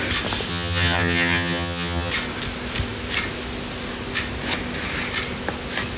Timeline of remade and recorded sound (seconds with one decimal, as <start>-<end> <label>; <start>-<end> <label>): 0.0-0.5 recorded; 0.5-2.1 remade; 2.1-6.0 recorded